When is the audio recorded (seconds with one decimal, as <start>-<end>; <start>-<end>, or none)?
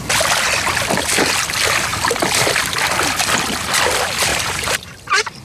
0.0-4.3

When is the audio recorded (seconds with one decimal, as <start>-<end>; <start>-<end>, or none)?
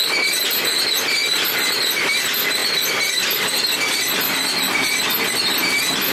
0.0-2.6; 5.0-6.1